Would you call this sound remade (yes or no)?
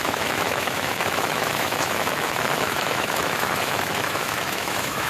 yes